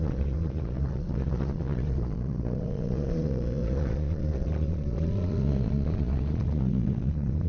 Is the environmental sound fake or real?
fake